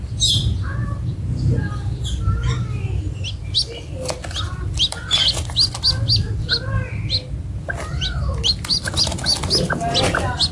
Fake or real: real